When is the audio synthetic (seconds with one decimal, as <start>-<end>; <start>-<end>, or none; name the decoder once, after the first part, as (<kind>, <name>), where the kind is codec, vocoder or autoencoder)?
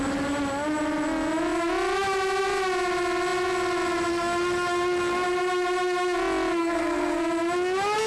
6.6-7.2 (codec, SNAC)